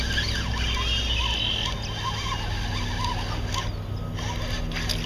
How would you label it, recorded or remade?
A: recorded